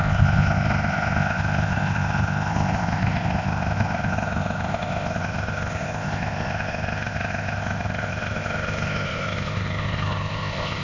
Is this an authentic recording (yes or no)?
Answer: no